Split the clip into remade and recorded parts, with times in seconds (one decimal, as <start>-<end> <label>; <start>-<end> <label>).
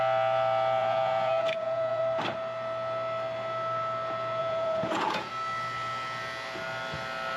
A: 0.0-0.8 recorded; 0.8-2.0 remade; 2.0-4.4 recorded; 4.4-5.3 remade; 5.3-7.4 recorded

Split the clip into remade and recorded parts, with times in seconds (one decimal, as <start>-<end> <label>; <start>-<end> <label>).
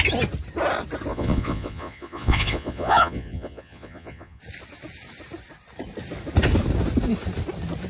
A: 0.0-1.1 recorded; 1.1-4.4 remade; 4.4-7.9 recorded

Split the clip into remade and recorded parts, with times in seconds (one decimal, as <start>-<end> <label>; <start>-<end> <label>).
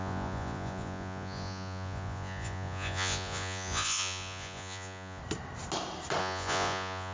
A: 0.0-5.2 remade; 5.2-6.2 recorded; 6.2-7.1 remade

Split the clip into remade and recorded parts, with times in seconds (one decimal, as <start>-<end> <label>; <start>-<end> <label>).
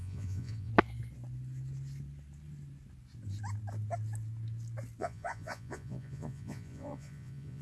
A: 0.0-0.7 remade; 0.7-5.0 recorded; 5.0-7.6 remade